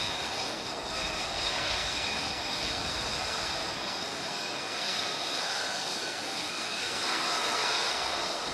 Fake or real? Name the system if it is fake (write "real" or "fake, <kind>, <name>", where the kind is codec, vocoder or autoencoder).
fake, codec, SNAC